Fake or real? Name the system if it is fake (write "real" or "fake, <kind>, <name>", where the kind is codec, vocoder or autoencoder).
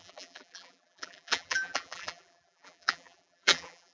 fake, vocoder, BigVGAN v2